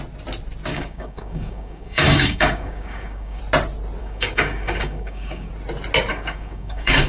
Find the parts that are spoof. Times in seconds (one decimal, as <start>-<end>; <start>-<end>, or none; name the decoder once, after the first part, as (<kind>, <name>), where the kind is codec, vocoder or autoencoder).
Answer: 0.7-3.4 (codec, DAC); 4.0-5.5; 6.1-7.1